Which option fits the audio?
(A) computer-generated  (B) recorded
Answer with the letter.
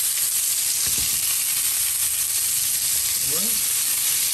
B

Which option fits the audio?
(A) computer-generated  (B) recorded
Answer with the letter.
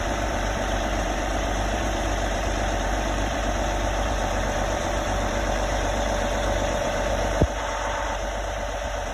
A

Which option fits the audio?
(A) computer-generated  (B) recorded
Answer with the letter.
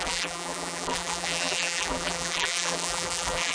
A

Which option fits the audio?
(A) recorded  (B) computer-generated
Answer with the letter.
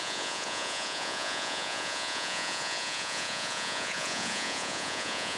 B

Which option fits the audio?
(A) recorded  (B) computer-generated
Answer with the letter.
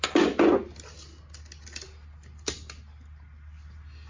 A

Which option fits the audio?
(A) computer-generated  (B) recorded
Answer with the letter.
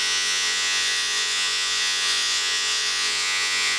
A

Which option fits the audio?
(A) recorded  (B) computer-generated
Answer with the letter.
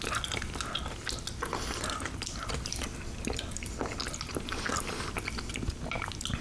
A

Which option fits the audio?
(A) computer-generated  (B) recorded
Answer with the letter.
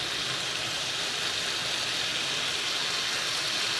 B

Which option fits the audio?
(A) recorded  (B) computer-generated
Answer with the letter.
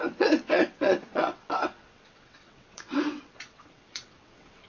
B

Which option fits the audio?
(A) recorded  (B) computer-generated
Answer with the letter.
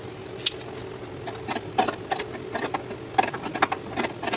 A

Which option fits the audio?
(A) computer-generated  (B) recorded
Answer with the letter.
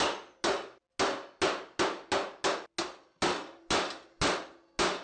B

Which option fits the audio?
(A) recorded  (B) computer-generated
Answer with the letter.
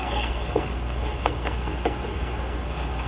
B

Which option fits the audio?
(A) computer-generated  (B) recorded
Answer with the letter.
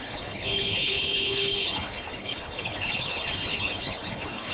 A